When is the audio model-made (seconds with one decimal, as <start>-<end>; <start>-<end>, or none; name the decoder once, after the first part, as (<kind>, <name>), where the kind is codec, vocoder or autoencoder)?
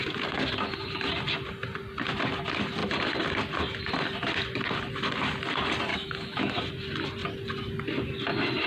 5.9-6.6 (autoencoder, DAC-VAE)